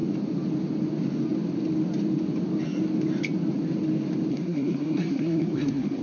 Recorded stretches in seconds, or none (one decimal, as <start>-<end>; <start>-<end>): 0.0-4.3